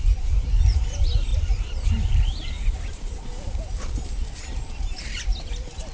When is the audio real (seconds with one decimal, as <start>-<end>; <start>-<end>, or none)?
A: 0.0-1.3; 2.9-5.9